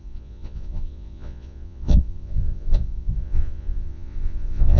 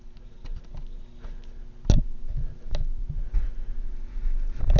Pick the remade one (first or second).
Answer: first